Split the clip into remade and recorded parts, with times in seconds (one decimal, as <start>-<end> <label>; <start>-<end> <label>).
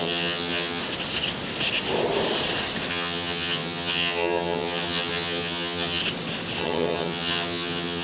0.0-0.8 remade; 0.8-2.9 recorded; 2.9-6.0 remade; 6.0-6.6 recorded; 6.6-8.0 remade